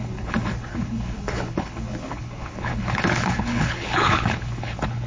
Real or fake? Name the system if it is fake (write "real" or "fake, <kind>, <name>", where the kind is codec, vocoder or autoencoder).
fake, codec, HILCodec